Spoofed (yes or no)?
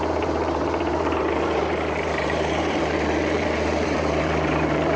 yes